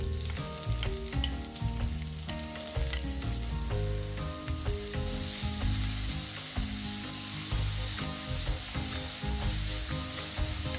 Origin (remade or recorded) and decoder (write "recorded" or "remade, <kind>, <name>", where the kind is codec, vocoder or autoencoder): recorded